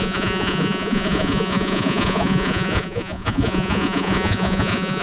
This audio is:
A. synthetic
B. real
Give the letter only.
A